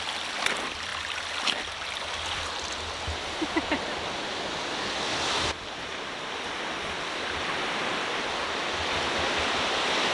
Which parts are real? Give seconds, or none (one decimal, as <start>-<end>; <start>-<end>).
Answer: 0.0-10.1